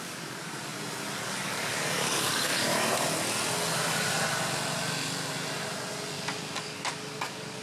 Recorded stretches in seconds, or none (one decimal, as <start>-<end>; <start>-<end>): 0.7-1.2; 2.7-6.6